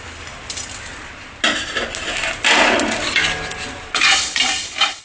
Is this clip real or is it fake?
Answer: real